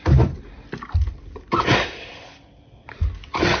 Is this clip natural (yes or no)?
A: yes